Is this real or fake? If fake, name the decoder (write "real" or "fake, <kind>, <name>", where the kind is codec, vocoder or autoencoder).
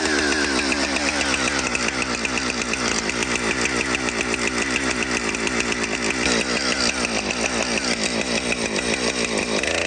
real